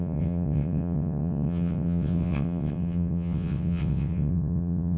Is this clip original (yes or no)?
no